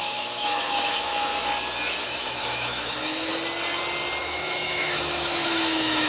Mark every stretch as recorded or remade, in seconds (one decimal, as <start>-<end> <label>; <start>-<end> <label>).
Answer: 0.0-1.3 remade; 1.3-2.0 recorded; 2.0-3.3 remade; 3.3-4.2 recorded; 4.2-6.1 remade